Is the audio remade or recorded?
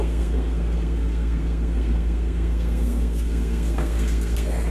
remade